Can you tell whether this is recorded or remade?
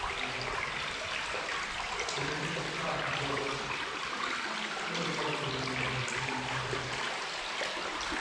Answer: recorded